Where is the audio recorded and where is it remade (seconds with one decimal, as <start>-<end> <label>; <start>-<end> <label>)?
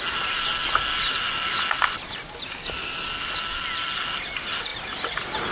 0.0-5.5 recorded